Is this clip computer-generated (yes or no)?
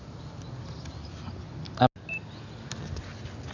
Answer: no